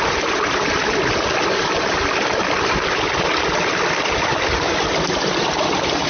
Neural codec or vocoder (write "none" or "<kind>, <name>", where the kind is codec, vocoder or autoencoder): none